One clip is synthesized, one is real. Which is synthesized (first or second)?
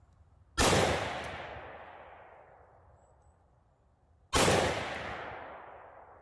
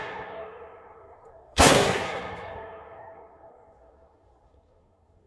second